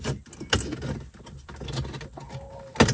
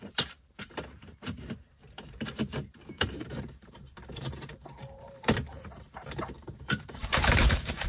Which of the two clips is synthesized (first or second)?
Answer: second